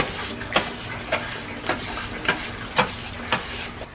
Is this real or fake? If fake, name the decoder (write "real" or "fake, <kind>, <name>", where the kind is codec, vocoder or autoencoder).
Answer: real